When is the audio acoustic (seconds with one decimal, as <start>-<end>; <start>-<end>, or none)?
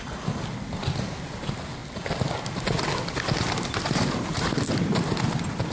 0.0-5.7